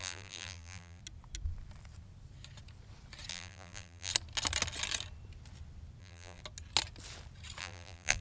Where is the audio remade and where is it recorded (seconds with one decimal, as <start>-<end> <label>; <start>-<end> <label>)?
0.0-1.0 remade; 1.0-3.3 recorded; 3.3-4.1 remade; 4.1-6.0 recorded; 6.0-6.4 remade; 6.4-7.6 recorded; 7.6-8.2 remade

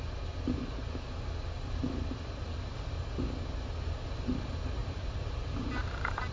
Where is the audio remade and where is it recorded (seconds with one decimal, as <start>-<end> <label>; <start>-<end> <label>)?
0.0-4.8 recorded; 4.8-6.3 remade

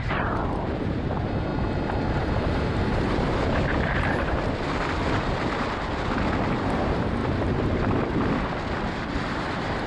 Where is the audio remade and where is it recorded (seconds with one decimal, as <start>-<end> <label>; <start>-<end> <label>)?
0.0-1.5 remade; 1.5-2.4 recorded; 2.4-3.7 remade; 3.7-6.6 recorded; 6.6-7.2 remade; 7.2-9.4 recorded; 9.4-9.9 remade

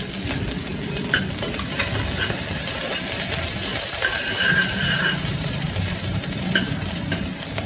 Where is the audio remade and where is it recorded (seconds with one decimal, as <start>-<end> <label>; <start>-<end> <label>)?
0.0-3.7 recorded; 3.7-6.8 remade; 6.8-7.7 recorded